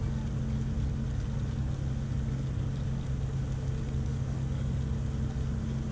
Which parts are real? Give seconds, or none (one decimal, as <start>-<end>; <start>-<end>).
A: 0.0-4.1; 4.8-5.9